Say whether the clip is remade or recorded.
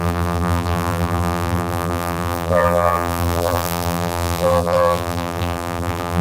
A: remade